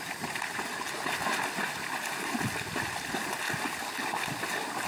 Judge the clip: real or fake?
real